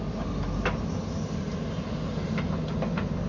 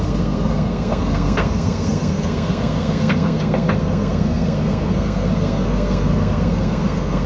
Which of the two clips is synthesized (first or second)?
second